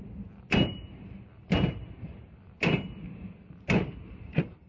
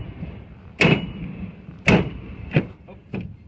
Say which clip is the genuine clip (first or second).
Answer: first